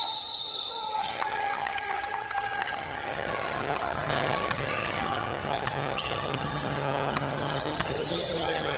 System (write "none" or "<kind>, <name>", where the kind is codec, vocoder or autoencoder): vocoder, HiFi-GAN